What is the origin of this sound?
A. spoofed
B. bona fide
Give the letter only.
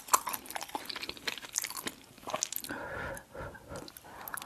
B